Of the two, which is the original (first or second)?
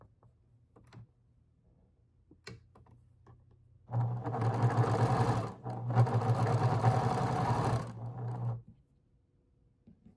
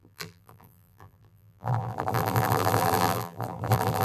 first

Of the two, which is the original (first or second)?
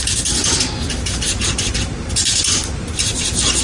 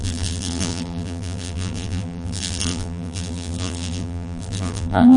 first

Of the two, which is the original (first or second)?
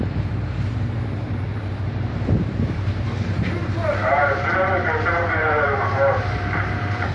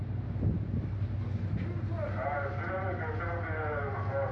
second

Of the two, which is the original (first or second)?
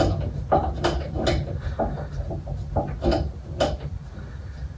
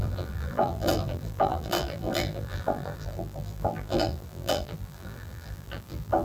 first